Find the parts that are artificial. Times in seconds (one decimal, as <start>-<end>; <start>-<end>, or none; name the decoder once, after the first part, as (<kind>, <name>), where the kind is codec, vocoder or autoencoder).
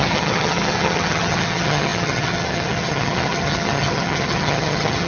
0.0-5.1 (vocoder, HiFi-GAN)